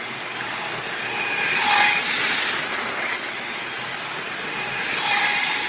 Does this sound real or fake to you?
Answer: real